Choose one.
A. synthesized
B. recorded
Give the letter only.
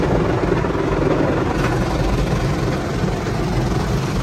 B